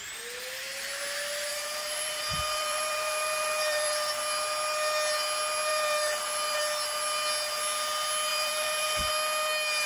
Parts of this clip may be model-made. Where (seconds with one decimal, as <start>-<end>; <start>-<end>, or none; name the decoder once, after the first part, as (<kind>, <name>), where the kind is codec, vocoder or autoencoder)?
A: 1.5-4.1 (vocoder, BigVGAN v2); 5.7-6.6; 8.3-9.1